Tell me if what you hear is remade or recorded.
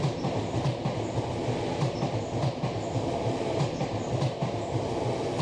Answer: recorded